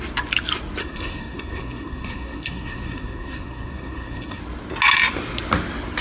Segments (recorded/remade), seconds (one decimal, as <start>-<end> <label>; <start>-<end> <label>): 0.0-0.8 recorded; 0.8-4.4 remade; 4.4-6.0 recorded